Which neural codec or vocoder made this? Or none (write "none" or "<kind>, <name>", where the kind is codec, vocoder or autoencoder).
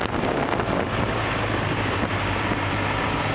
none